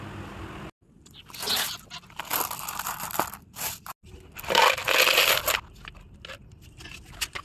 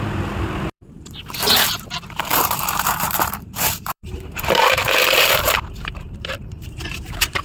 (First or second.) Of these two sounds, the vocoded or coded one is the second